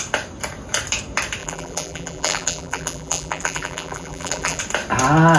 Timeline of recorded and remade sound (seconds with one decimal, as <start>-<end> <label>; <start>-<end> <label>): 0.0-1.4 recorded; 1.4-4.6 remade; 4.6-5.4 recorded